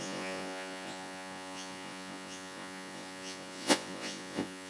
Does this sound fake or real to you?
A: fake